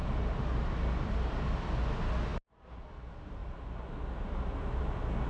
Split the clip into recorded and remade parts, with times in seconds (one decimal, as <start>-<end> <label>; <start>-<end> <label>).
0.0-5.3 recorded